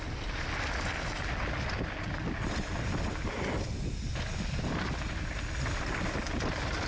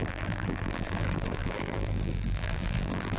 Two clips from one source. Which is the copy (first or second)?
second